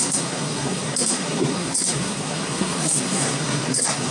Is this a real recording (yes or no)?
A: no